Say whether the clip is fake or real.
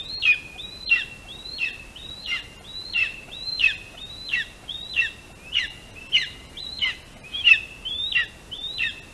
real